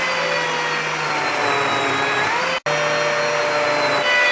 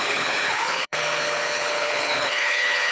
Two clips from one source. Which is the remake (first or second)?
second